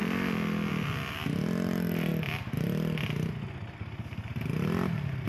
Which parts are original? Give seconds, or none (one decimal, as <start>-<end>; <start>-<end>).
0.0-5.3